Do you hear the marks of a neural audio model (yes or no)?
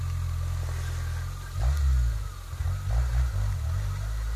no